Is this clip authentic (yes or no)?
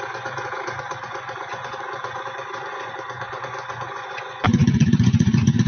no